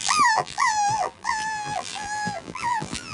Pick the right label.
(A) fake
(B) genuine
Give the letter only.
A